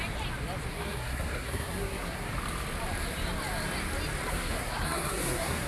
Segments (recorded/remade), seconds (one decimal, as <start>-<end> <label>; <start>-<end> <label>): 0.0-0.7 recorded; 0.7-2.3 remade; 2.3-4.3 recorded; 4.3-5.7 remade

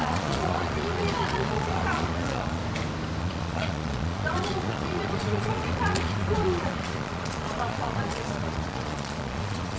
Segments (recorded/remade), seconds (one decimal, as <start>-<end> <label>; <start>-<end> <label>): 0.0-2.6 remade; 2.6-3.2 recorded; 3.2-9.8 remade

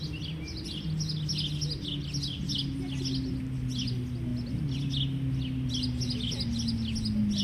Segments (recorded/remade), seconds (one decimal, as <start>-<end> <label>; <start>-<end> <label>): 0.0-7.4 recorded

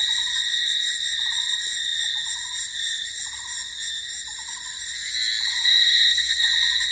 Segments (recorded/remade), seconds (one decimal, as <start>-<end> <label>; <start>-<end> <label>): 0.0-5.5 recorded; 5.5-6.5 remade; 6.5-6.9 recorded

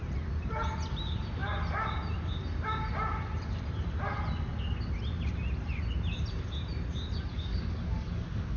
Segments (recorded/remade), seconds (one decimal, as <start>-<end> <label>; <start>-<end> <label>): 0.0-7.3 recorded; 7.3-8.6 remade

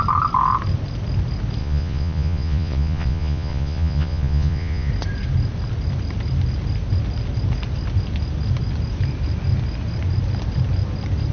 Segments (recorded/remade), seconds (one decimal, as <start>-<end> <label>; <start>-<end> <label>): 0.0-1.6 recorded; 1.6-4.9 remade; 4.9-11.3 recorded